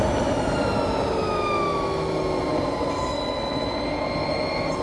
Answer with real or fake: real